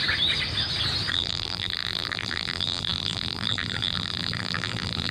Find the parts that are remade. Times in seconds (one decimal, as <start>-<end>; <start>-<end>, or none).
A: 1.1-5.1